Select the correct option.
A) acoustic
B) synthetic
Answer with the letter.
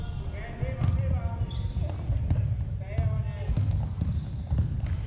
A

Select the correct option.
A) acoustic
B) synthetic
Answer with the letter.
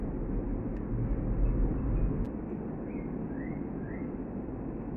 A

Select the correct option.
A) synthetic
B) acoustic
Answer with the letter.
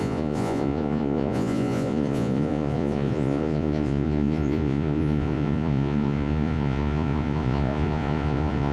A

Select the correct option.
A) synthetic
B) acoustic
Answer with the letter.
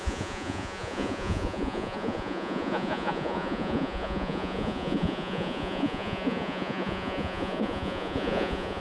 A